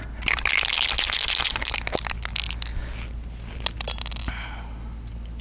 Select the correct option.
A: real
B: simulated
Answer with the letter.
A